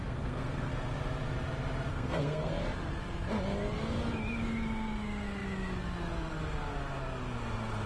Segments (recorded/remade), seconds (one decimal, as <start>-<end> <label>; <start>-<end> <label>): 0.0-0.7 remade; 0.7-1.9 recorded; 1.9-2.5 remade; 2.5-7.9 recorded